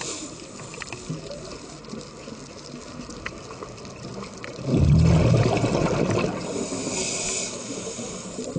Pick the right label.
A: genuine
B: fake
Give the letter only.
A